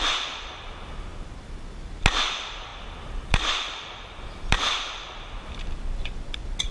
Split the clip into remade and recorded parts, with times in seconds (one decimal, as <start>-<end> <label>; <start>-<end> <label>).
0.0-2.7 recorded; 2.7-5.4 remade; 5.4-6.7 recorded